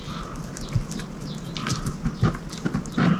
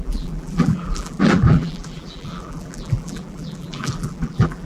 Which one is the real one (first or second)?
first